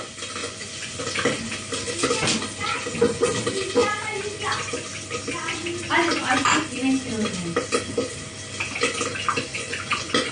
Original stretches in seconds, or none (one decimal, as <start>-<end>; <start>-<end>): 0.0-0.4; 1.0-9.5